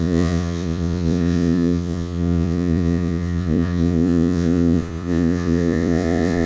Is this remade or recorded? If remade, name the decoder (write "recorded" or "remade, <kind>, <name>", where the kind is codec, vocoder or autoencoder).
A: remade, vocoder, Vocos